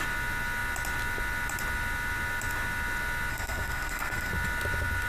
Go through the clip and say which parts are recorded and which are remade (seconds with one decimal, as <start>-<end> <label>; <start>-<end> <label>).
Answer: 0.0-3.3 recorded; 3.3-4.3 remade; 4.3-5.1 recorded